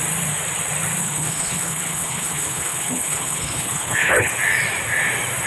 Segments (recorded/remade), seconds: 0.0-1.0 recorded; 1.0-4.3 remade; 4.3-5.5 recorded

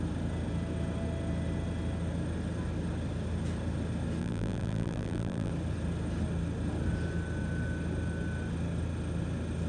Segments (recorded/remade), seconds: 0.0-4.2 recorded; 4.2-5.5 remade; 5.5-9.7 recorded